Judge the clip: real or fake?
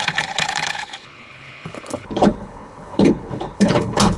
fake